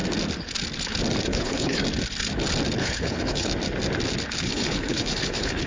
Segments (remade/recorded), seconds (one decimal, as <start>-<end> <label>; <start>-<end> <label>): 0.0-1.2 recorded; 1.2-1.8 remade; 1.8-2.8 recorded; 2.8-3.5 remade; 3.5-4.4 recorded; 4.4-5.7 remade